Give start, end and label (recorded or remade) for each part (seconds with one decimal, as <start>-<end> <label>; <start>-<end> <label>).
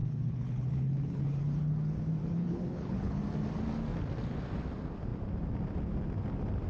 0.0-1.4 remade; 1.4-2.2 recorded; 2.2-3.2 remade; 3.2-6.7 recorded